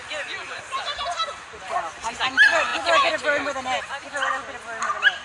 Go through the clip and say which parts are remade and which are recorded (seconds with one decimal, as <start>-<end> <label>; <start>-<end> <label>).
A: 0.0-5.2 recorded